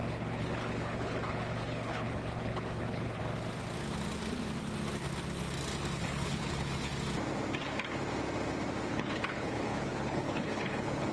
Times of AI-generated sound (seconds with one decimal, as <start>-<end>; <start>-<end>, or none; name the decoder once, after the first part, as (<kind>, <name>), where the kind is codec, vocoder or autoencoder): 0.0-3.2 (codec, HILCodec); 6.0-6.9; 8.9-11.1